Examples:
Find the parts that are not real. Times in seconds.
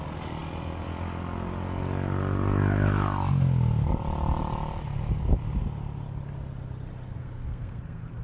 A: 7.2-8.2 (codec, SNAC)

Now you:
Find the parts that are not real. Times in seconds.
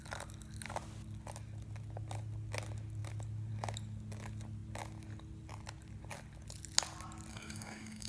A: 7.3-8.1 (codec, DAC)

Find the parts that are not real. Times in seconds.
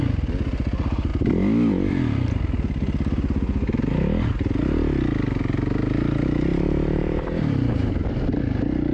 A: 6.5-8.2 (vocoder, BigVGAN v2)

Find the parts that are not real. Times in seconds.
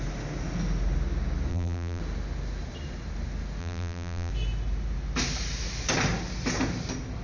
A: 1.5-2.0 (vocoder, BigVGAN v2); 3.6-4.3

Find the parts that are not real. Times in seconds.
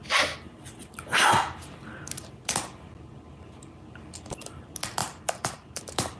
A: 5.0-5.8 (vocoder, BigVGAN v2)